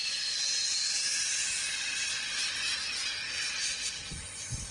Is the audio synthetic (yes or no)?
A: no